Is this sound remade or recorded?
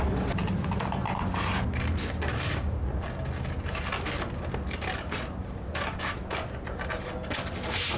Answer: recorded